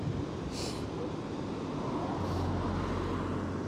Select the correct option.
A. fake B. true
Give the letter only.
B